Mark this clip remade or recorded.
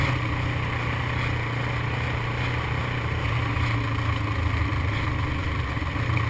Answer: recorded